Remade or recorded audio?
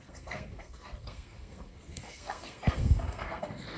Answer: remade